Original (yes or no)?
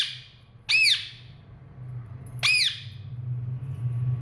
yes